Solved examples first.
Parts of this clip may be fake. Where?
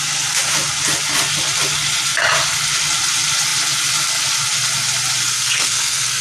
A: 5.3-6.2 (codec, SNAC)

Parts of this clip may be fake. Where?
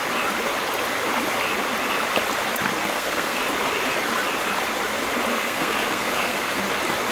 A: 2.8-3.4 (codec, SNAC); 5.3-6.6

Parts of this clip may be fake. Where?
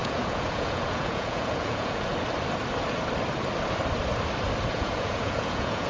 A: 0.0-2.1 (vocoder, Vocos); 4.7-5.9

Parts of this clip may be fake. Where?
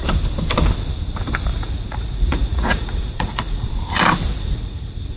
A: 1.5-3.7 (vocoder, Vocos); 4.3-5.2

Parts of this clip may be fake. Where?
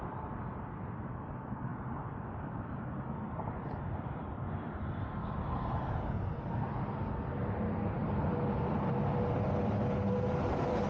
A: 1.7-4.9 (vocoder, BigVGAN v2); 8.0-9.8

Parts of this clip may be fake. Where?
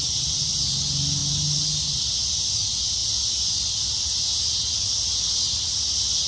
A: none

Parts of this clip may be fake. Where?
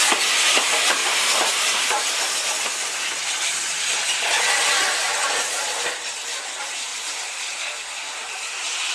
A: 6.9-7.6 (vocoder, BigVGAN v2)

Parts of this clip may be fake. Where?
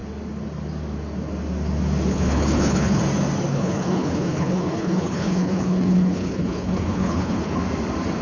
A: 2.1-3.0 (codec, HILCodec); 3.5-7.6